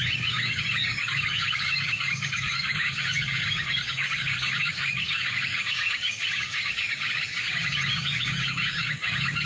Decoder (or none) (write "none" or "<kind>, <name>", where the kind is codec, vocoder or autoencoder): codec, DAC